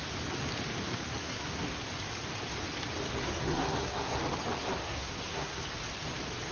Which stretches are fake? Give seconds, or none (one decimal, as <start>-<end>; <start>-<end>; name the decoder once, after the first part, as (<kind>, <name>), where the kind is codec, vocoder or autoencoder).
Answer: 1.2-1.8 (codec, SNAC); 3.2-4.2; 4.8-5.6